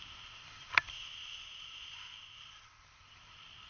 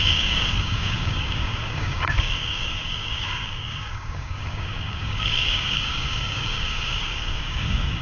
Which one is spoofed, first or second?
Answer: second